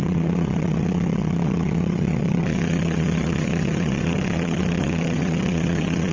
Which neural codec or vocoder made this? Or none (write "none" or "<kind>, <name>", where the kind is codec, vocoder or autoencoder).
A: vocoder, WaveNeXt